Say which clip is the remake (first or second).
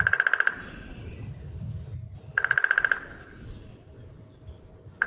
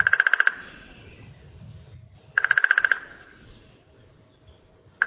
second